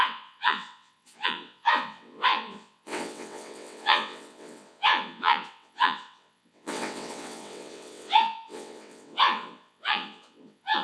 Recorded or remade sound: remade